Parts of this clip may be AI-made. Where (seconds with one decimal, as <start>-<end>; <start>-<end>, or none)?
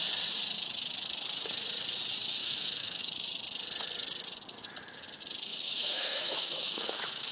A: 2.4-3.0; 5.5-7.3